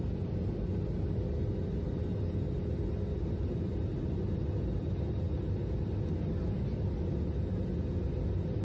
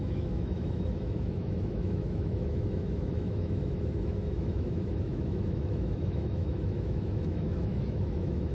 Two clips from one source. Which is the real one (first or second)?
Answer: first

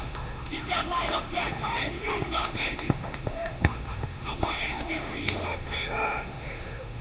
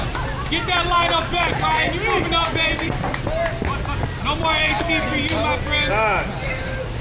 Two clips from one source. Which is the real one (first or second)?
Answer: second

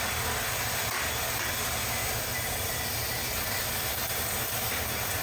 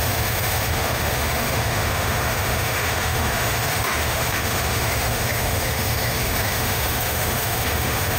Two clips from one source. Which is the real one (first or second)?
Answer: first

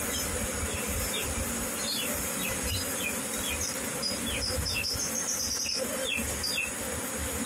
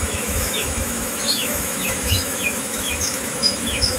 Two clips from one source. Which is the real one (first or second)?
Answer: first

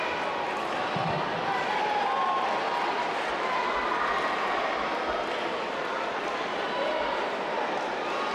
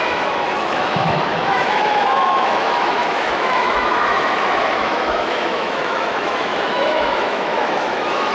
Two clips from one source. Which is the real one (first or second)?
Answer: first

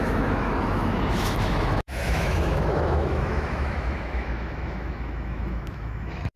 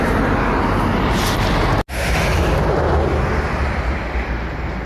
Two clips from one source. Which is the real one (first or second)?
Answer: second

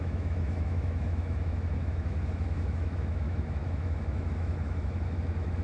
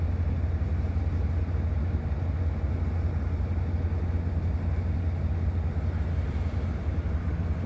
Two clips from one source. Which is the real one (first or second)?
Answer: second